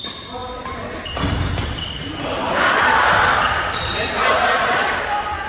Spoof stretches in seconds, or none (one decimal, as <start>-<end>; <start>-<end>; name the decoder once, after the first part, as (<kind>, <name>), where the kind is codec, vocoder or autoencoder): 4.2-5.5 (vocoder, BigVGAN v2)